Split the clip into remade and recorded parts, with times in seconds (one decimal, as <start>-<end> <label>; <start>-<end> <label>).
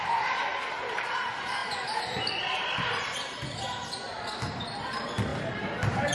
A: 0.0-3.8 remade; 3.8-4.5 recorded; 4.5-6.1 remade